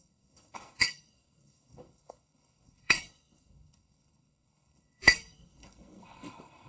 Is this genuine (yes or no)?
no